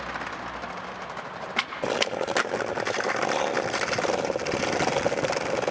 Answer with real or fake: real